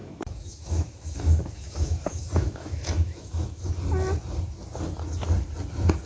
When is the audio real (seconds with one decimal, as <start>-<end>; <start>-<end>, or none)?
3.7-6.1